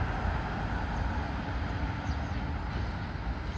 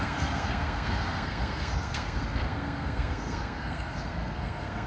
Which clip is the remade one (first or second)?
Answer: second